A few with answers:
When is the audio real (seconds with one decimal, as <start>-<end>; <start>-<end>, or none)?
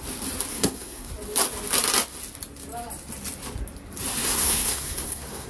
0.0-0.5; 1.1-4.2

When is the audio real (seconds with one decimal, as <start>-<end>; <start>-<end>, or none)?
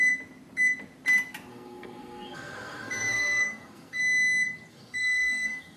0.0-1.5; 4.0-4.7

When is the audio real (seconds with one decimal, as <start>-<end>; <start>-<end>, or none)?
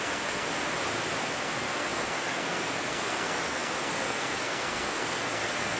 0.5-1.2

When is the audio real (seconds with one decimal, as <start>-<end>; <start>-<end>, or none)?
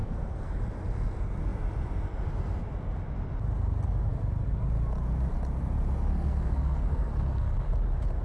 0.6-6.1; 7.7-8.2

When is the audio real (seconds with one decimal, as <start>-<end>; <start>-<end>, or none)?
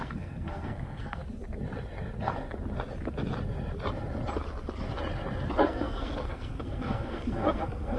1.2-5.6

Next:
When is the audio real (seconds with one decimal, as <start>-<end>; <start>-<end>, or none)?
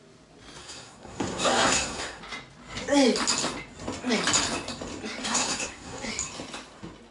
0.0-0.6; 2.2-5.2; 6.1-7.1